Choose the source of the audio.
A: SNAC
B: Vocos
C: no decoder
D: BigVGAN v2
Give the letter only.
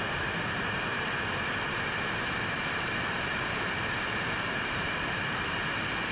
C